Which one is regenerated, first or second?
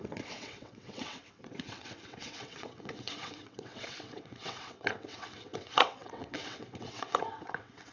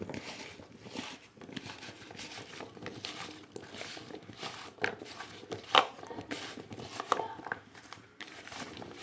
first